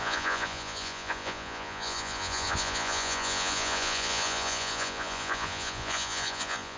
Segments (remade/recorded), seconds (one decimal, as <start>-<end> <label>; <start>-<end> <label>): 0.0-6.8 remade